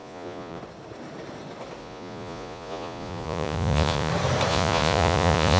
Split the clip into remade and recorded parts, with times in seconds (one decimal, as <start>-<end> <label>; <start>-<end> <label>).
0.0-0.6 remade; 0.6-1.8 recorded; 1.8-4.1 remade; 4.1-4.5 recorded; 4.5-5.6 remade